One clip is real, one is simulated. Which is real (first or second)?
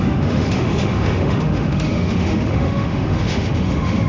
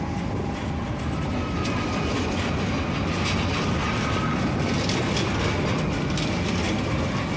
second